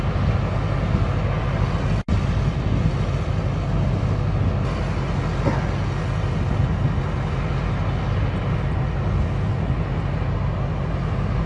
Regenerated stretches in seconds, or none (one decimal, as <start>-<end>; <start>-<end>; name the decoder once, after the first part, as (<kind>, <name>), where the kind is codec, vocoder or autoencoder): none